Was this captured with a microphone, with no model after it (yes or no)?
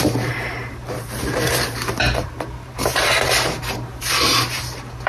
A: no